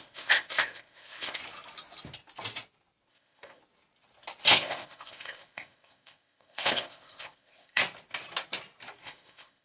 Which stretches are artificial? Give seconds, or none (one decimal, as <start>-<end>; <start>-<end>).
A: 0.0-1.4; 3.1-3.6; 4.5-7.8; 9.0-9.6